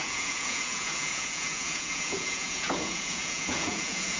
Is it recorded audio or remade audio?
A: remade